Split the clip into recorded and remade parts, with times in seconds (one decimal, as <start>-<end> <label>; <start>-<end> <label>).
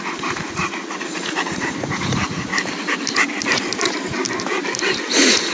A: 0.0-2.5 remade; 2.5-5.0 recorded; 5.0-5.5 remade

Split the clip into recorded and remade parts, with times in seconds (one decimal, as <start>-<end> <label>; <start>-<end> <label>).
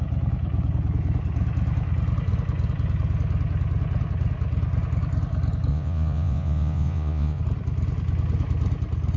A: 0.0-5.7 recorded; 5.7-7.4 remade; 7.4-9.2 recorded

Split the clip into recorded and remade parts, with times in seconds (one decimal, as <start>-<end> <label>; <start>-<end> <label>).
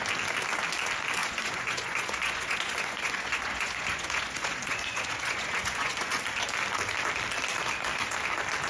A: 0.0-1.2 recorded; 1.2-6.2 remade; 6.2-8.7 recorded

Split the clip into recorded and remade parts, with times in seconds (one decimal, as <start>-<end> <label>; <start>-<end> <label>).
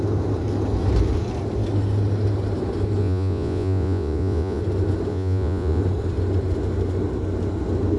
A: 0.0-3.0 recorded; 3.0-4.6 remade; 4.6-5.1 recorded; 5.1-5.8 remade; 5.8-8.0 recorded